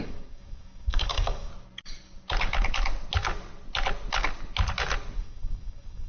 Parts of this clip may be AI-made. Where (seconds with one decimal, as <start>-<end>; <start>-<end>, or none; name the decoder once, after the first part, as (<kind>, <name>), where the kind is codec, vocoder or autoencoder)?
0.0-1.5 (codec, DAC); 5.2-6.1